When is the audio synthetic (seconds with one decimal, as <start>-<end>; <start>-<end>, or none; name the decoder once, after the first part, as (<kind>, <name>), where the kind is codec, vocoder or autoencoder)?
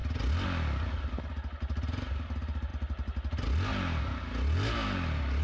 none